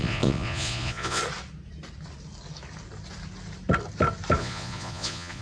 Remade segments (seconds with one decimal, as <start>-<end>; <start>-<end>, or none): 0.0-1.2; 4.4-5.4